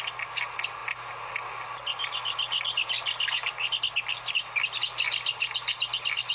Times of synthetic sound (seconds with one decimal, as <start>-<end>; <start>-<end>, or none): none